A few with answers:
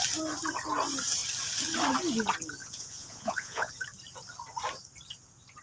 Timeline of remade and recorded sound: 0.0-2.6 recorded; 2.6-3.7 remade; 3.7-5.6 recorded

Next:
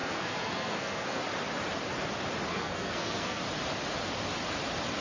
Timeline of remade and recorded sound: 0.0-1.2 remade; 1.2-2.5 recorded; 2.5-3.4 remade; 3.4-5.0 recorded

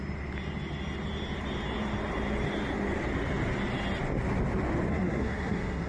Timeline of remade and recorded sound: 0.0-4.9 recorded; 4.9-5.9 remade